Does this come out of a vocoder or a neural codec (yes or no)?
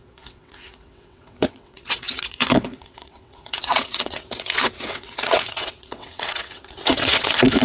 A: yes